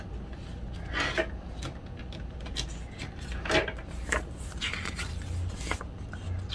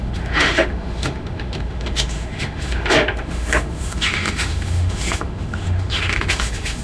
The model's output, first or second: second